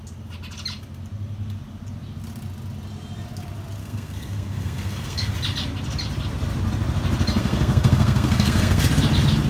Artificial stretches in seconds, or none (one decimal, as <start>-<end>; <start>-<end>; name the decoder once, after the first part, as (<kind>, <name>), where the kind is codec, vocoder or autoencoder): 3.8-5.3 (codec, SNAC); 7.4-8.8